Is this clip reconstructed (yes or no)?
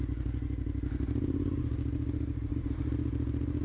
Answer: no